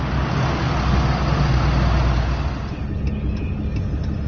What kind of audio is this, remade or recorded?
recorded